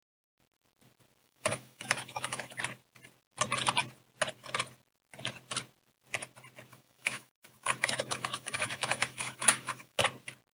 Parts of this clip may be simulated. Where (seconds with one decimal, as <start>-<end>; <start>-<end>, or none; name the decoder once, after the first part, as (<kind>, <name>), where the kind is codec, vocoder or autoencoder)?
1.2-2.6 (autoencoder, DAC-VAE); 6.7-10.0